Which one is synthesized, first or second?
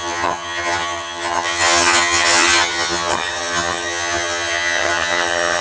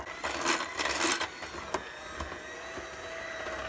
first